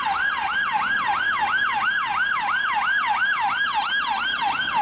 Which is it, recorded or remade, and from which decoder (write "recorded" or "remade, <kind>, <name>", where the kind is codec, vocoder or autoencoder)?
recorded